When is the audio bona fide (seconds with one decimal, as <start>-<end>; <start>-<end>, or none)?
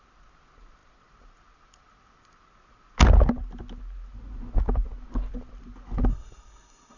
0.0-6.1